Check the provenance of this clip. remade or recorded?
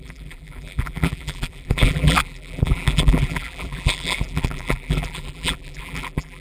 remade